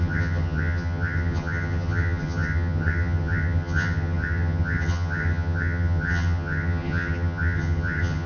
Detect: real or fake fake